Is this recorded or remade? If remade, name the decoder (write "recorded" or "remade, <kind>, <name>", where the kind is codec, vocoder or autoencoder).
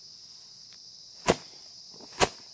recorded